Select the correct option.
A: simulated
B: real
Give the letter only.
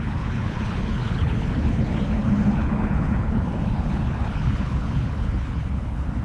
A